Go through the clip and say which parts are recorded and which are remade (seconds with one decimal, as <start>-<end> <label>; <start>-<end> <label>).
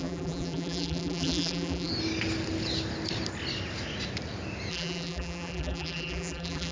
0.0-1.9 remade; 1.9-4.7 recorded; 4.7-6.7 remade